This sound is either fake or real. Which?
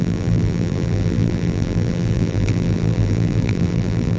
fake